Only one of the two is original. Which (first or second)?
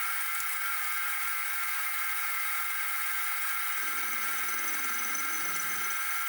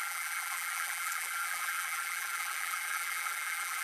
first